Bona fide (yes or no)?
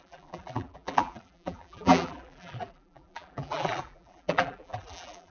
no